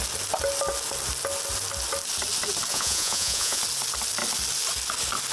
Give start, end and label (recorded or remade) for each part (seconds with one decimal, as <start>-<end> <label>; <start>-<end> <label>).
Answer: 0.0-2.7 recorded; 2.7-3.6 remade; 3.6-5.3 recorded